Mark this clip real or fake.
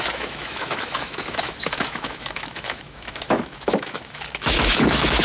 fake